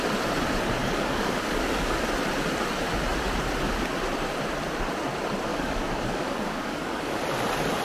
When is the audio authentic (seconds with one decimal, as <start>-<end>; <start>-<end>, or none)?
0.0-0.8; 2.0-5.5; 7.2-7.8